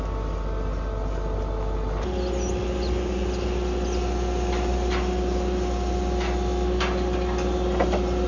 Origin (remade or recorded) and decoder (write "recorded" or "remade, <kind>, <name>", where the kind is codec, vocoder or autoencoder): recorded